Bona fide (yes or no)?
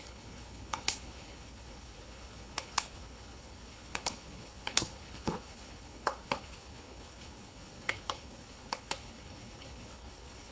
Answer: no